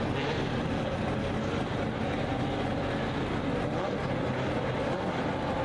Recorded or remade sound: recorded